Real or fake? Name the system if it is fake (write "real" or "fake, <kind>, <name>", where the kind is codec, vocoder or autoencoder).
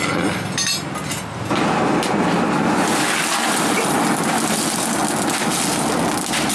real